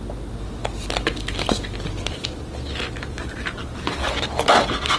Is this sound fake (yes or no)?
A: no